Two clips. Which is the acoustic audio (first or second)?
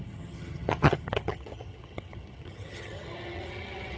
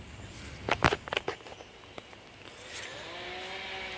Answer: second